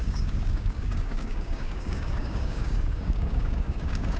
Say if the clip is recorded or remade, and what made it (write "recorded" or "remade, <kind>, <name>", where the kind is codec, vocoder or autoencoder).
remade, codec, DAC